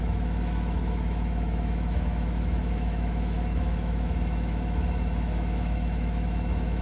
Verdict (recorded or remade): remade